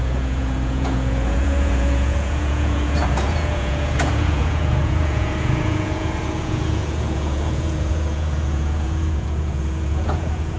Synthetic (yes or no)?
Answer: yes